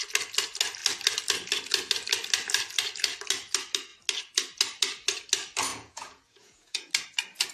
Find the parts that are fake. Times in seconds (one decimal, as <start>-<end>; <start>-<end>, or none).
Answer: 5.7-6.9